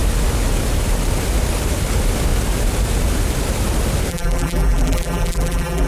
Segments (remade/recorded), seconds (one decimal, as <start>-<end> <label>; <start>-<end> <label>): 0.0-4.1 recorded; 4.1-5.9 remade